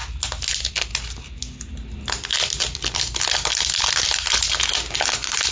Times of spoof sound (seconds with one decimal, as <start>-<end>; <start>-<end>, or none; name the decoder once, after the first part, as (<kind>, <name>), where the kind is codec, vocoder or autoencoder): none